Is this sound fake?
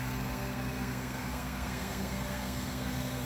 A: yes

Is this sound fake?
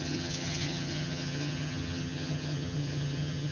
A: yes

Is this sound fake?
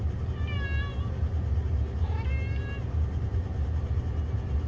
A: no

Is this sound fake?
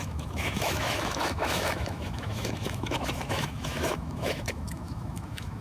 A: yes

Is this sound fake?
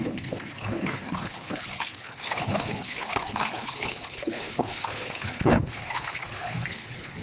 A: yes